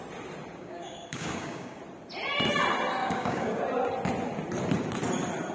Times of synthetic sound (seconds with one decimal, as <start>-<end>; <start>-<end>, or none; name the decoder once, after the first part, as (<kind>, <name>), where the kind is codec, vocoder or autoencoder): 0.6-1.8 (codec, DAC); 3.0-3.6